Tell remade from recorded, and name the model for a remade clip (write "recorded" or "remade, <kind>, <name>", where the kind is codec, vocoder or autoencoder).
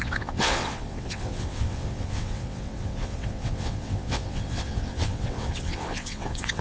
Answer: remade, vocoder, WaveNeXt